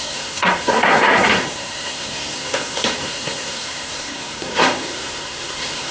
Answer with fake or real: fake